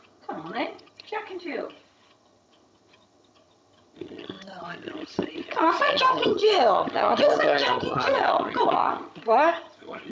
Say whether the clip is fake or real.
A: fake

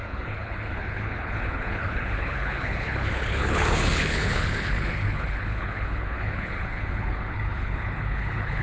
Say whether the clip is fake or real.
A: fake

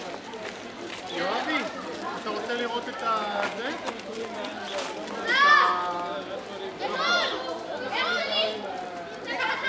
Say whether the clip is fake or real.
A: real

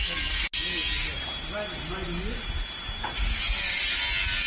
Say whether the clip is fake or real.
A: real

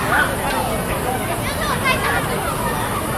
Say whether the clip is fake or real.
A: real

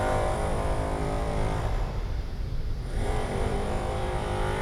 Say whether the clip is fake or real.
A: fake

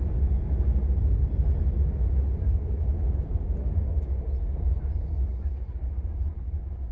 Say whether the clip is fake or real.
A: real